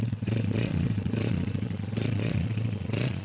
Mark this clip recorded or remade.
remade